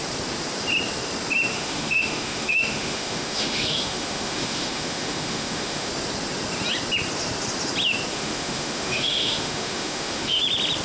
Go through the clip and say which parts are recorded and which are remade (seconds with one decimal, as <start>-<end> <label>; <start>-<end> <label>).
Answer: 0.0-1.5 recorded; 1.5-5.9 remade; 5.9-8.1 recorded; 8.1-10.4 remade; 10.4-10.8 recorded